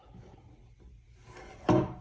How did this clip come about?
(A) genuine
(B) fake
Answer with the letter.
A